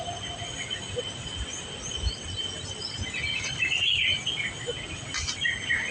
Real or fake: real